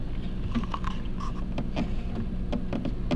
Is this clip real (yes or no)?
yes